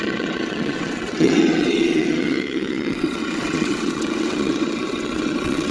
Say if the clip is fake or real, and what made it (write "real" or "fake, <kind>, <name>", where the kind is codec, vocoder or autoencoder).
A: fake, vocoder, WaveNeXt